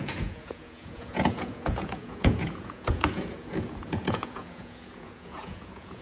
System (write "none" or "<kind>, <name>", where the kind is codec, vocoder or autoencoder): vocoder, Vocos